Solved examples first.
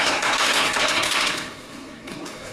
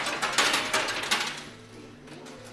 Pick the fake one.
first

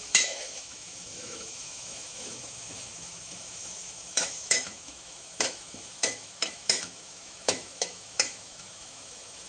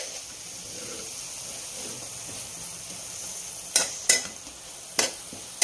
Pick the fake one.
first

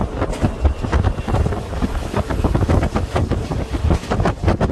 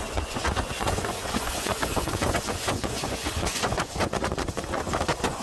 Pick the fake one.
second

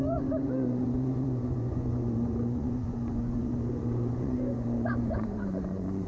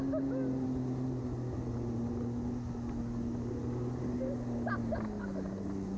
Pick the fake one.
first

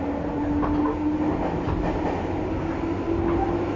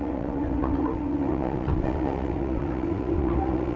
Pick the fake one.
second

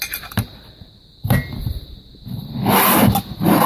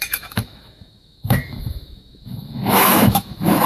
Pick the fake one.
second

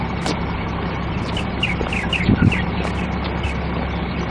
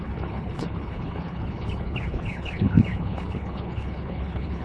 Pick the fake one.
second